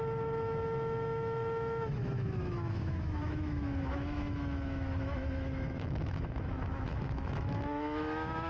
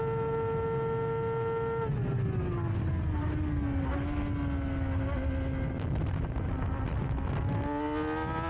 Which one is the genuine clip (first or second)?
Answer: second